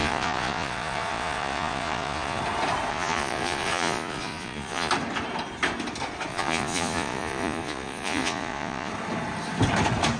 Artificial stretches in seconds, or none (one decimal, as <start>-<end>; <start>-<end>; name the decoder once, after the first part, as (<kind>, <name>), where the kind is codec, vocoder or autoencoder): 0.0-2.4 (vocoder, Vocos); 2.9-4.9; 6.3-8.9

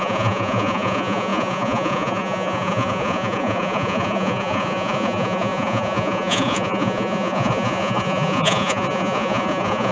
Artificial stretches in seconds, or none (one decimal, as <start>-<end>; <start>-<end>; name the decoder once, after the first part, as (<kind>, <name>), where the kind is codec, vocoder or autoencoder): 0.0-9.9 (vocoder, Vocos)

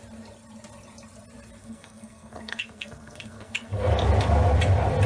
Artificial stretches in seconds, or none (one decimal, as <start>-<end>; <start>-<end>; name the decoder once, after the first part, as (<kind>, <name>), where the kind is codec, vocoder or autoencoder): 1.6-3.9 (codec, SNAC)

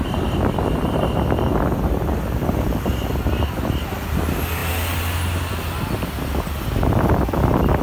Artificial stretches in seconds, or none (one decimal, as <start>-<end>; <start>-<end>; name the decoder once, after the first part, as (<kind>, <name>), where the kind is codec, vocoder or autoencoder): none

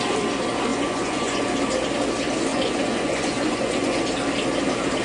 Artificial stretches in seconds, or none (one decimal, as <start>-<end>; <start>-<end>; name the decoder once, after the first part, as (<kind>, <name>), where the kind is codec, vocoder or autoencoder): 0.7-1.4 (vocoder, Vocos); 2.5-4.0